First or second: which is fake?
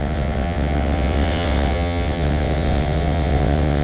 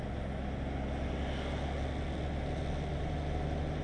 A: first